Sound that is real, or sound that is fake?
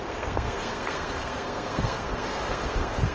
fake